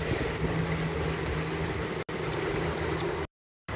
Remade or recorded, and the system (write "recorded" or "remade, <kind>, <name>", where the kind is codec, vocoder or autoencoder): recorded